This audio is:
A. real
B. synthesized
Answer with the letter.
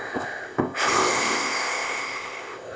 B